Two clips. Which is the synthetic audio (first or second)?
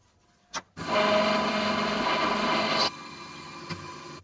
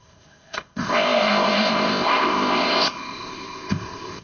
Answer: second